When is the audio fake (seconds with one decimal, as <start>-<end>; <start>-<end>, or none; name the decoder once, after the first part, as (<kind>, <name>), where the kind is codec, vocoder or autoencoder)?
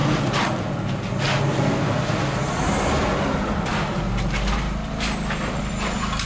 none